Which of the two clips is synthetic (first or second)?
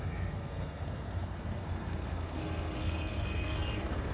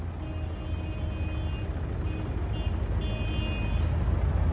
first